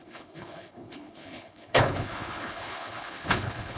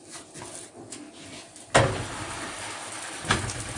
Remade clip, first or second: first